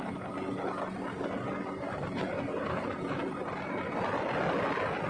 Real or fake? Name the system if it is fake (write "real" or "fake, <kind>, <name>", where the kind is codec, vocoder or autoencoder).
real